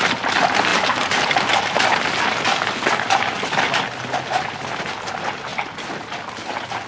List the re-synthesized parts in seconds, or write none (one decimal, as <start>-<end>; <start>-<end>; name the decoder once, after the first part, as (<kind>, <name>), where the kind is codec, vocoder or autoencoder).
none